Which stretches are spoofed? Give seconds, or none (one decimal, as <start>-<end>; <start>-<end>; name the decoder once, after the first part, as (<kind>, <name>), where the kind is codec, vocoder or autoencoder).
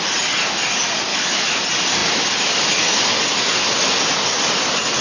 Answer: 1.1-1.6 (autoencoder, DAC-VAE)